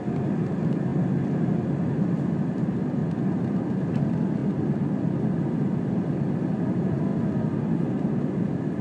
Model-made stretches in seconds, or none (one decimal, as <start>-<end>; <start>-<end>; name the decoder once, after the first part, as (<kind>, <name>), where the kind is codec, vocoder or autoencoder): 0.0-0.9 (vocoder, BigVGAN v2); 1.9-3.0; 3.6-4.4; 5.9-7.1; 8.1-8.8